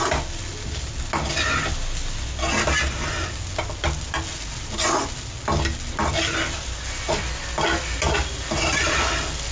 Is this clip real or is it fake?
real